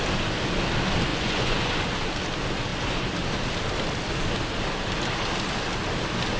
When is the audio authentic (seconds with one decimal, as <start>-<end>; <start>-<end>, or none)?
0.0-1.1; 1.7-6.4